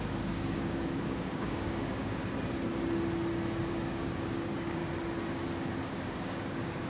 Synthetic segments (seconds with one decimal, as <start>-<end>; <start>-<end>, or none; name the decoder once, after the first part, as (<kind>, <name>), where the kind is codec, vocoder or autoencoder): 0.0-2.2 (codec, DAC); 3.7-4.8; 5.9-6.9